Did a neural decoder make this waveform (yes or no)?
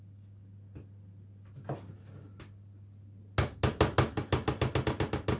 no